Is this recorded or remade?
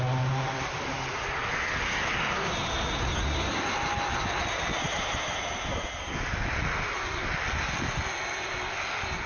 recorded